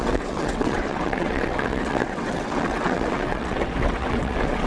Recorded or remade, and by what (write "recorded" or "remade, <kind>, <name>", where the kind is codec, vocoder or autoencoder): remade, vocoder, WaveNeXt